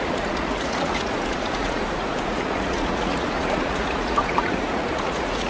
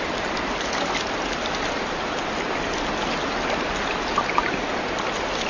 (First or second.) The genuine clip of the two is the second